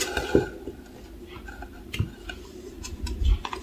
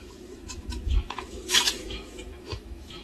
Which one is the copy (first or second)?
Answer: second